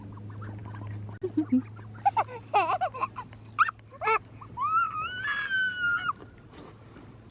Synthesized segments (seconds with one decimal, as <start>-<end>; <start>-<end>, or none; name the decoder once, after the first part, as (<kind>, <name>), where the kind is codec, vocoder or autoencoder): none